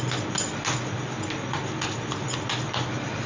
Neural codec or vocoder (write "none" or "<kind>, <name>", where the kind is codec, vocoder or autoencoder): none